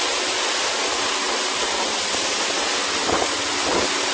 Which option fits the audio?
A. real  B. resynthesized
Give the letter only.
A